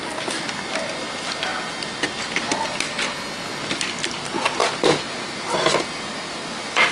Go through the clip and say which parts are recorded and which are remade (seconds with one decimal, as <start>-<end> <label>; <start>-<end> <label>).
0.0-6.9 recorded

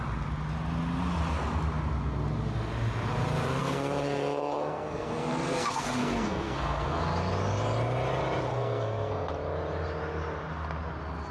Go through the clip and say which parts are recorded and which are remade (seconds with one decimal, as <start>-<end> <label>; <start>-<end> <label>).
0.0-3.6 recorded; 3.6-7.0 remade; 7.0-8.5 recorded; 8.5-9.3 remade; 9.3-11.3 recorded

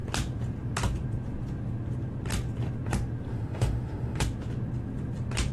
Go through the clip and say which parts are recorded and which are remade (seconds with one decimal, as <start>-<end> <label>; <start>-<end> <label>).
0.0-3.3 recorded; 3.3-4.2 remade; 4.2-5.5 recorded

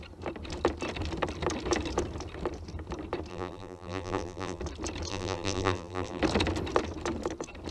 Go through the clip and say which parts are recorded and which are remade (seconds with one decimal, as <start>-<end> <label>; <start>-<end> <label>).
0.0-3.3 recorded; 3.3-4.6 remade; 4.6-5.1 recorded; 5.1-6.2 remade; 6.2-7.7 recorded